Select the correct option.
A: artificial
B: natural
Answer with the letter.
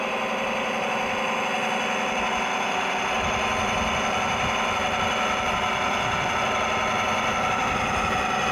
B